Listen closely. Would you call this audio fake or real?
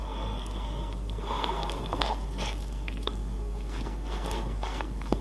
fake